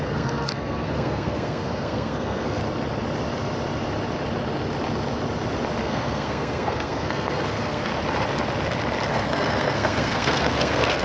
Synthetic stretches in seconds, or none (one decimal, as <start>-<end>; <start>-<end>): 0.0-2.6; 5.8-7.9; 9.1-11.0